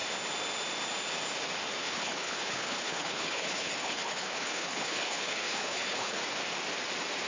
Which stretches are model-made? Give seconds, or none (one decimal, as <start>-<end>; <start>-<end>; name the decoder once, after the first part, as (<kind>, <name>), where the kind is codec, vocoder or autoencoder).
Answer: 1.8-6.2 (codec, HILCodec)

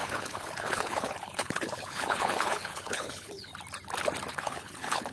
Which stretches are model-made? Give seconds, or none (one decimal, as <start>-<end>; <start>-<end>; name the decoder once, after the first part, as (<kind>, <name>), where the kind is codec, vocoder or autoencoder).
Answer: 0.0-3.5 (codec, HILCodec); 4.3-5.1

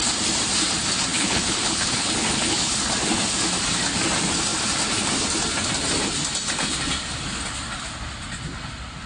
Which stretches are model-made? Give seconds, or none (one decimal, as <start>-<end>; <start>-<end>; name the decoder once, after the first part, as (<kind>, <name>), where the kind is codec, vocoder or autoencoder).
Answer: 1.1-2.7 (codec, HILCodec)

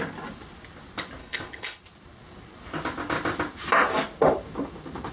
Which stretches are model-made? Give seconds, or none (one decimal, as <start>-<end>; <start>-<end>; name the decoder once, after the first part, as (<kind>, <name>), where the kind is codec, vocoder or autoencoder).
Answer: 1.2-1.8 (codec, HILCodec)

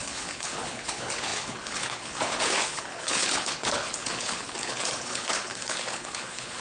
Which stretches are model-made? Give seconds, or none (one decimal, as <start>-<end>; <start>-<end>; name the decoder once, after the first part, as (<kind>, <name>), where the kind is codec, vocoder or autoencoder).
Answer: 0.0-6.6 (codec, HILCodec)

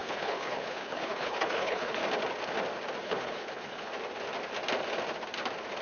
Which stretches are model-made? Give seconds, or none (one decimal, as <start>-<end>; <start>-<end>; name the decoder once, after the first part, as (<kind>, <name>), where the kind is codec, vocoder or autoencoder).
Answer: 0.0-2.0 (codec, HILCodec); 3.0-3.9